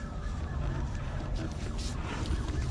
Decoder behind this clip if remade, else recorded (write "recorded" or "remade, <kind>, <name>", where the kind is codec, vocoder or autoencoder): remade, vocoder, BigVGAN v2